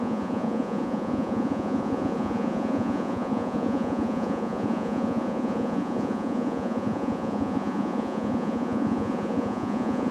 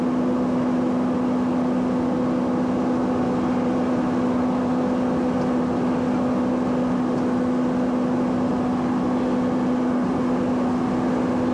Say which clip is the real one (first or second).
second